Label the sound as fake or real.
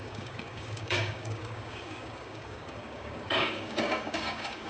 fake